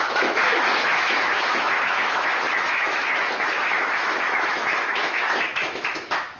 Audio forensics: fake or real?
fake